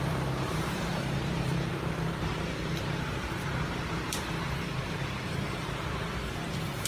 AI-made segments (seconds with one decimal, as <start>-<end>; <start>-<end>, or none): 0.0-6.9